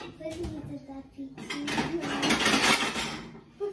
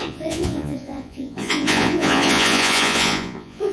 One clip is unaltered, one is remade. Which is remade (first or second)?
second